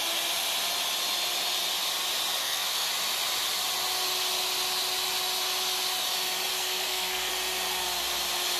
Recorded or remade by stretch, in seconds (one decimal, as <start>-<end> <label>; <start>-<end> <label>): 0.0-2.4 recorded; 2.4-2.9 remade; 2.9-6.5 recorded; 6.5-7.3 remade; 7.3-8.6 recorded